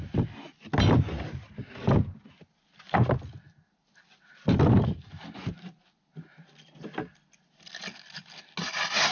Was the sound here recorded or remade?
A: recorded